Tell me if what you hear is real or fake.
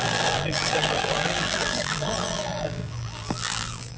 fake